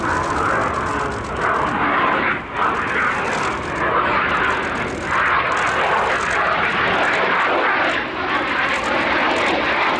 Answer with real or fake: real